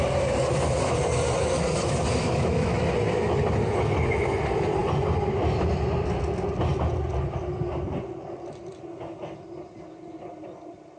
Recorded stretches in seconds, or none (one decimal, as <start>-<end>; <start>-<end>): 0.0-2.2; 2.8-11.0